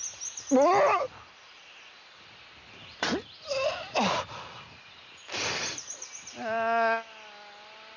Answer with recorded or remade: recorded